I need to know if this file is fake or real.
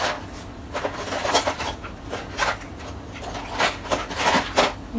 real